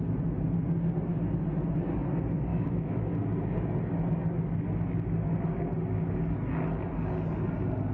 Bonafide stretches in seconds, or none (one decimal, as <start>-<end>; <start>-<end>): 0.0-2.5; 3.0-7.9